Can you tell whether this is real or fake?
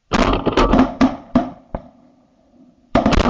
fake